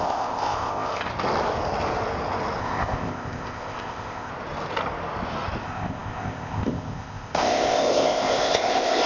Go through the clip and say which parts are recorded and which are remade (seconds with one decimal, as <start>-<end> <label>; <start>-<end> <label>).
0.0-1.1 remade; 1.1-2.6 recorded; 2.6-4.3 remade; 4.3-5.6 recorded; 5.6-9.1 remade